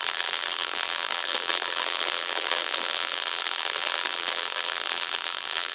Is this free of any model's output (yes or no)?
no